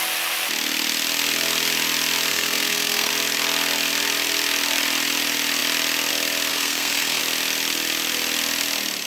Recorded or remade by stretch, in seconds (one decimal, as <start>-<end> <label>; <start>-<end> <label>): 0.0-2.3 recorded; 2.3-3.1 remade; 3.1-6.5 recorded; 6.5-7.2 remade; 7.2-9.1 recorded